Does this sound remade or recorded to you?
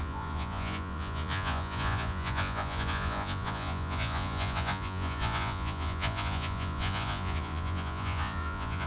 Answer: remade